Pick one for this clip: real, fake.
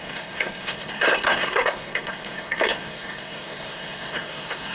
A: fake